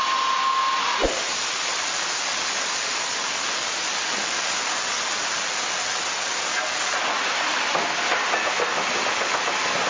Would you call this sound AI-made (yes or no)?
no